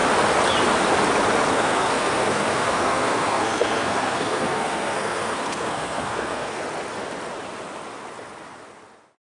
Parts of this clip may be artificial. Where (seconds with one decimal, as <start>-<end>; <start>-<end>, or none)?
1.5-6.6